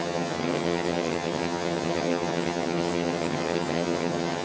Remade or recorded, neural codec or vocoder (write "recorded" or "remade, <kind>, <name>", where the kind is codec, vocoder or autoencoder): remade, vocoder, HiFi-GAN